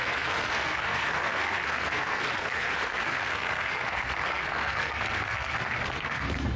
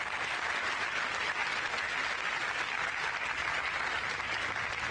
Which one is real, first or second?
second